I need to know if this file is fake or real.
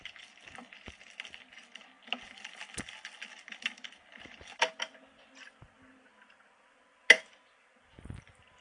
real